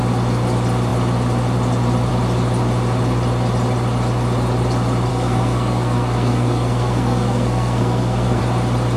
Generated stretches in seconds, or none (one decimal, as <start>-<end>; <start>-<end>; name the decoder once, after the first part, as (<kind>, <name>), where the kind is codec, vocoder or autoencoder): 5.1-8.4 (codec, SNAC)